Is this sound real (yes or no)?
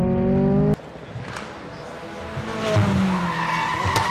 yes